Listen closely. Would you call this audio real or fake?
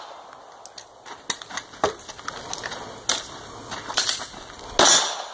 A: real